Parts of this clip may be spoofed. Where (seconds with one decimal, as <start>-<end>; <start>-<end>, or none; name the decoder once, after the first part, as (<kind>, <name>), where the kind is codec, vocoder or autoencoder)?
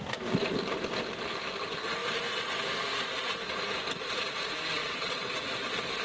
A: 4.8-5.4 (vocoder, WaveNeXt)